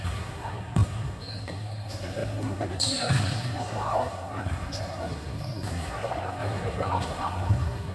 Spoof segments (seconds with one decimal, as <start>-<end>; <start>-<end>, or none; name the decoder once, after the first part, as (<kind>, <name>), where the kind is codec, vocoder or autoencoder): 0.0-7.9 (codec, SNAC)